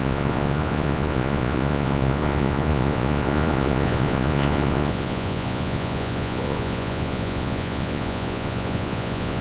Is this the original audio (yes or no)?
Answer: no